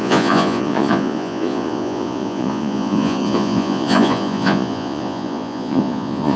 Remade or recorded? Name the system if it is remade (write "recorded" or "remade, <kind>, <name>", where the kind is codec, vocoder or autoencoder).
remade, vocoder, Vocos